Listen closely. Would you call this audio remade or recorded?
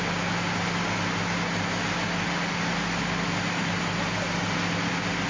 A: recorded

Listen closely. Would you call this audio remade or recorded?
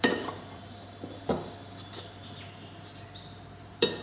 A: remade